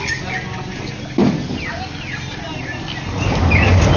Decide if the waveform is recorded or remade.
recorded